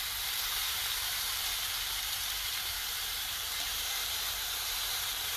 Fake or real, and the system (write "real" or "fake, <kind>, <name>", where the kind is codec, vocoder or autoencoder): fake, vocoder, BigVGAN v2